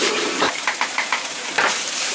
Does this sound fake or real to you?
fake